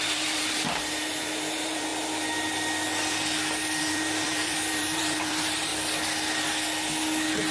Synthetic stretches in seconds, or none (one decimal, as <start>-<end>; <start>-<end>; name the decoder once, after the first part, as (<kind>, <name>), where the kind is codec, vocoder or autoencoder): 0.0-1.9 (vocoder, BigVGAN v2); 3.8-5.7